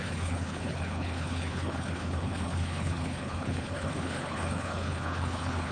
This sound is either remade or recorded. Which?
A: remade